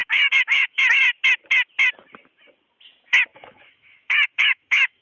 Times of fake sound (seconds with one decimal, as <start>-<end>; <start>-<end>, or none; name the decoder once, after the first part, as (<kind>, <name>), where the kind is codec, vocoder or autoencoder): 0.0-0.9 (autoencoder, DAC-VAE); 3.3-5.0